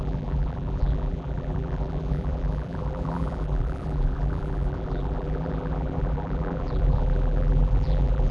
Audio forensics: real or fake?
fake